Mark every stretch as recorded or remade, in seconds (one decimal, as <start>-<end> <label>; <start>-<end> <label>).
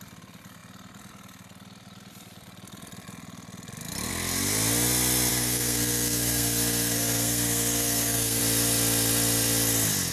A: 0.0-5.3 recorded; 5.3-8.4 remade; 8.4-10.1 recorded